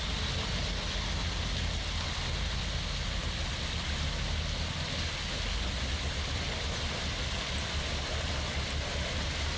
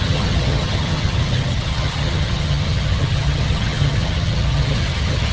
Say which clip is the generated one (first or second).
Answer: second